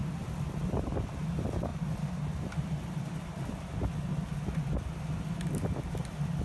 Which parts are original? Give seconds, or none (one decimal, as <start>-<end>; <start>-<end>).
0.0-6.4